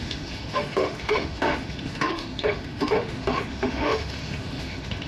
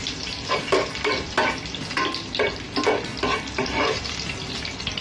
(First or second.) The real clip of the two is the second